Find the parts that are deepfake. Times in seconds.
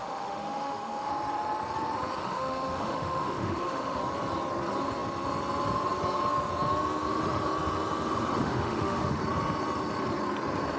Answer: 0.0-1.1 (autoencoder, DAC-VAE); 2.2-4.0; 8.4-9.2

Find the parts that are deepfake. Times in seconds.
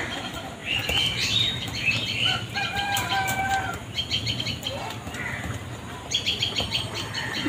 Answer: 0.6-3.4 (vocoder, BigVGAN v2)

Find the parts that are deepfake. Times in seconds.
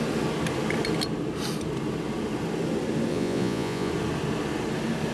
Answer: 3.1-3.9 (vocoder, Vocos)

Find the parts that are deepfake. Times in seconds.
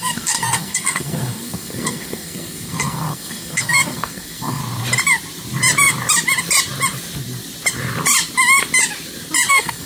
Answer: 0.0-4.6 (codec, SNAC); 9.5-9.9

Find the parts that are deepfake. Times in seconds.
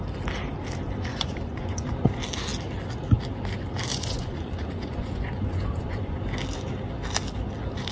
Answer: 1.1-2.1 (vocoder, Vocos); 3.9-6.2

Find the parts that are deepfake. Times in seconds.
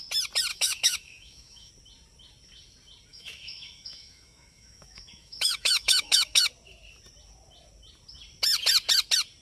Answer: 0.5-1.7 (autoencoder, DAC-VAE); 3.1-6.5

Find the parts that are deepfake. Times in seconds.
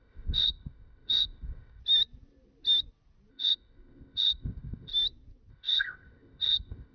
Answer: 0.0-1.8 (codec, ZipCodec); 3.3-4.9; 5.5-6.9